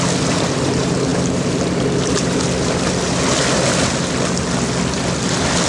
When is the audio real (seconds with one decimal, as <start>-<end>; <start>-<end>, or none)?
0.0-5.7